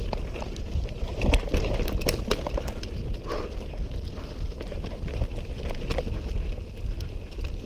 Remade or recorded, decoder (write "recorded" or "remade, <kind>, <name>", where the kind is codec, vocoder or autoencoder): recorded